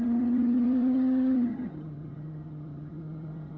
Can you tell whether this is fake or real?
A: fake